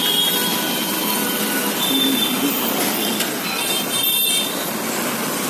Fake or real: real